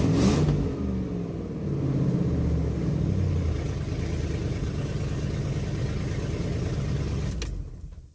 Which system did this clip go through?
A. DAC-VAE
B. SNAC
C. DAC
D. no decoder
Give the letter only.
D